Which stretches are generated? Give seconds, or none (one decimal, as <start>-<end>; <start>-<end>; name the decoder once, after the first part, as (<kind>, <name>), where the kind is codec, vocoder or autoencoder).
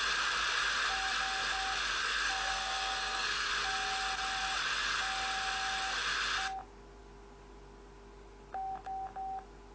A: 2.0-3.5 (codec, SNAC)